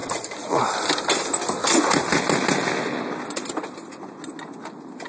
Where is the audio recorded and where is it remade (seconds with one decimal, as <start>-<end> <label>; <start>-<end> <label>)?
0.0-0.6 remade; 0.6-5.1 recorded